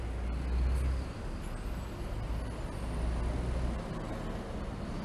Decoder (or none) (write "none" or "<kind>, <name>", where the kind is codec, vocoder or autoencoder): none